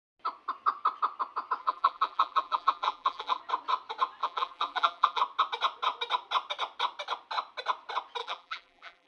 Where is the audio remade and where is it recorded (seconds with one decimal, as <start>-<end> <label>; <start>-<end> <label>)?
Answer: 0.0-1.6 recorded; 1.6-3.4 remade; 3.4-4.2 recorded; 4.2-5.2 remade; 5.2-8.2 recorded; 8.2-9.1 remade